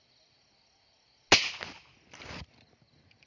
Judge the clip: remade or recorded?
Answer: recorded